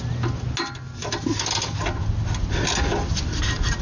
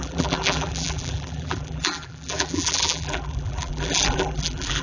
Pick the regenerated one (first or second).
second